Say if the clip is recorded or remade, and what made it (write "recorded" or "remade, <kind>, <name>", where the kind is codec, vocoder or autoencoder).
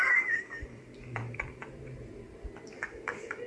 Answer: remade, vocoder, BigVGAN v2